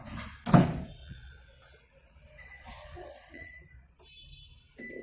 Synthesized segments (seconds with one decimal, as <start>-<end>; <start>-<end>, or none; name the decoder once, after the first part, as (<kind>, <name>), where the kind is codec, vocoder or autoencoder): 1.0-4.0 (vocoder, Vocos)